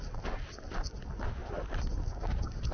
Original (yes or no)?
yes